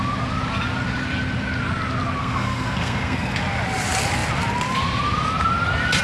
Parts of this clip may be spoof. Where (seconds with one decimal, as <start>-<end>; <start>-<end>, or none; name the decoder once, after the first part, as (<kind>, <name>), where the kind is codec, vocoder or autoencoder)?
2.2-3.4 (codec, SNAC)